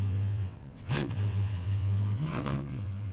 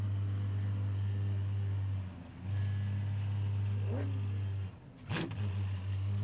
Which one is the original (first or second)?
second